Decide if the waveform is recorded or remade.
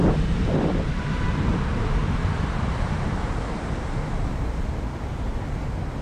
remade